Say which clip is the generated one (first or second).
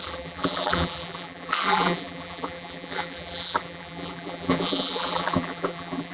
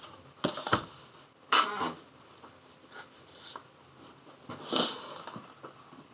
first